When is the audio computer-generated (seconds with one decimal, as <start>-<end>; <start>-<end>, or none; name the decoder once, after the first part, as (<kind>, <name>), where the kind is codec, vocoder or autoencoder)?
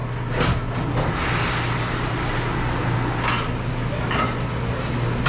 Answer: none